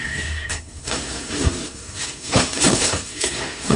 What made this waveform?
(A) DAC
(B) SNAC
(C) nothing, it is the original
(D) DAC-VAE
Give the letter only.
B